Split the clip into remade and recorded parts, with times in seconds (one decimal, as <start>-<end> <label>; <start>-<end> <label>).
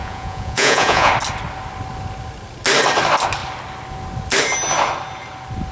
0.0-1.1 remade; 1.1-5.7 recorded